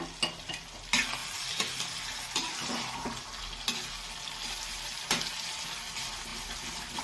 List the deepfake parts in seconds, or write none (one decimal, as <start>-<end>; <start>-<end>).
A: none